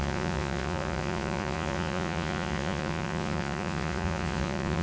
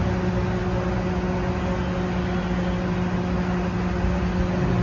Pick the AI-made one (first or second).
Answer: first